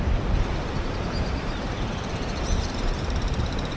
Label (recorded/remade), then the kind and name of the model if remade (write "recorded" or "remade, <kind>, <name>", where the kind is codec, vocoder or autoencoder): remade, vocoder, BigVGAN v2